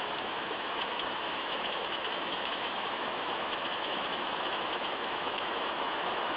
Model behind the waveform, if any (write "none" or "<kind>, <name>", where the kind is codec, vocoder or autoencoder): autoencoder, DAC-VAE